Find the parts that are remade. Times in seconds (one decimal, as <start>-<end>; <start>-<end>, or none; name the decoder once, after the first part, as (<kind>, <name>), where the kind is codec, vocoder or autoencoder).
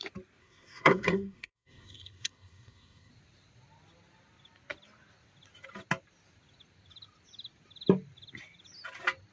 0.4-3.1 (codec, SNAC)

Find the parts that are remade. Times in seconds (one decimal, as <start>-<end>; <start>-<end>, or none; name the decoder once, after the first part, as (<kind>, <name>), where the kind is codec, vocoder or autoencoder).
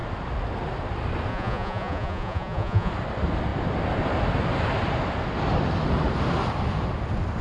1.3-2.9 (vocoder, Vocos)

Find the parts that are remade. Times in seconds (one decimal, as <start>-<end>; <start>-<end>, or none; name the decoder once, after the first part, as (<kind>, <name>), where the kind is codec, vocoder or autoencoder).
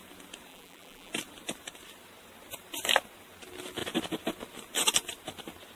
0.5-1.1 (vocoder, BigVGAN v2)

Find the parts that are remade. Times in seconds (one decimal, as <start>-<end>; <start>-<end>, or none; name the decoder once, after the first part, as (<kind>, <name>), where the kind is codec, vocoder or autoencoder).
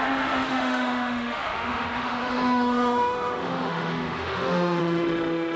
0.0-5.6 (autoencoder, DAC-VAE)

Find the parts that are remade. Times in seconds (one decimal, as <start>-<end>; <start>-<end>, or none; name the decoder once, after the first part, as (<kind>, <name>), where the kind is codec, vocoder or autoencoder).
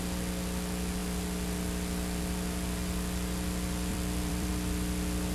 3.9-4.5 (vocoder, BigVGAN v2)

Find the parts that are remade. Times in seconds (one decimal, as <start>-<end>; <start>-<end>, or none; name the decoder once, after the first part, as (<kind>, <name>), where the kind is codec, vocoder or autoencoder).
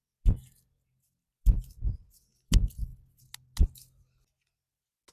none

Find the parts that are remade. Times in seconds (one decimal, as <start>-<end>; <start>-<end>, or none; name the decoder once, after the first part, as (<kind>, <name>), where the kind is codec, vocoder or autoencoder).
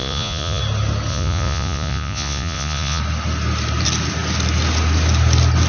0.0-0.6 (vocoder, Vocos); 1.1-3.0